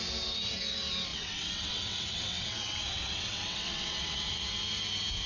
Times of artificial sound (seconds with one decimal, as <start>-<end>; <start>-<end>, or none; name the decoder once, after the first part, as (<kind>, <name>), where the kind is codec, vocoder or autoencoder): 1.1-4.3 (vocoder, WaveNeXt)